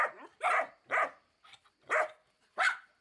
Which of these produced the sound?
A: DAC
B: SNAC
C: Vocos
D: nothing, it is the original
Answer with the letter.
D